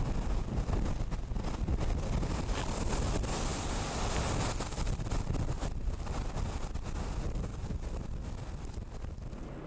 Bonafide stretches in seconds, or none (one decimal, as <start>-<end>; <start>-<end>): 0.0-9.7